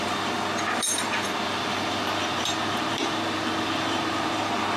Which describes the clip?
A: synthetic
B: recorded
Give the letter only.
A